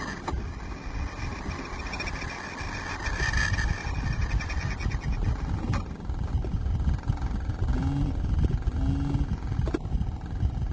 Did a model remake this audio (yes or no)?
no